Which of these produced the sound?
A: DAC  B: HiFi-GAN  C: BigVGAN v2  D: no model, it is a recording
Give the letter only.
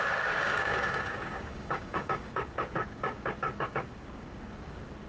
A